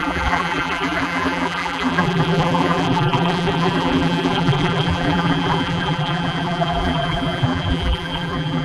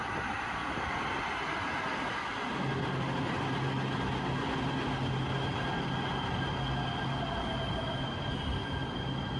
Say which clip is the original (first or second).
second